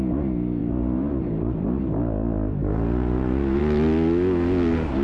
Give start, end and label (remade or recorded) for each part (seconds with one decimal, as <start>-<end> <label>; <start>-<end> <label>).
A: 0.0-0.6 recorded; 0.6-1.6 remade; 1.6-2.6 recorded; 2.6-3.6 remade; 3.6-5.0 recorded